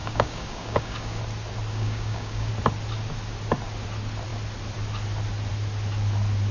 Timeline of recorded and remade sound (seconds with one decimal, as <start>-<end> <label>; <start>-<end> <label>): 0.0-1.2 remade; 1.2-1.7 recorded; 1.7-2.5 remade; 2.5-6.5 recorded